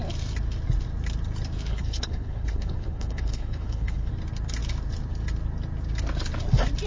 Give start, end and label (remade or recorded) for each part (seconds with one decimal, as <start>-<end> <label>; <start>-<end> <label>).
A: 0.0-1.7 recorded; 1.7-4.1 remade; 4.1-6.9 recorded

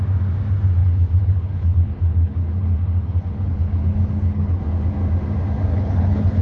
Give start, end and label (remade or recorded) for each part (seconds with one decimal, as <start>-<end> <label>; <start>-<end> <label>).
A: 0.0-0.8 recorded; 0.8-4.6 remade; 4.6-5.7 recorded; 5.7-6.4 remade

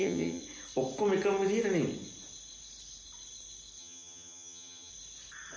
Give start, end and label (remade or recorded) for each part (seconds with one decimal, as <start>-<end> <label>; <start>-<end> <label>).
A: 0.0-0.4 remade; 0.4-3.8 recorded; 3.8-4.9 remade; 4.9-5.6 recorded

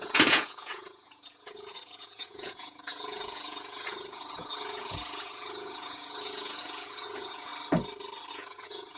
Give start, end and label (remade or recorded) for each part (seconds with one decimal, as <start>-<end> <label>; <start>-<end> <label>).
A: 0.0-7.5 remade; 7.5-8.3 recorded; 8.3-9.0 remade

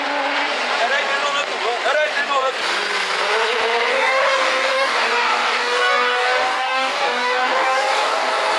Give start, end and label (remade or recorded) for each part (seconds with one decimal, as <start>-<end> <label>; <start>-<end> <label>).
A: 0.0-3.9 recorded; 3.9-8.6 remade